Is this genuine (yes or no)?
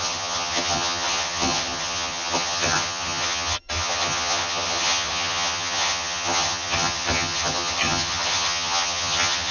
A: no